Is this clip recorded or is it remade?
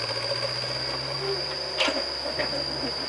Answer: recorded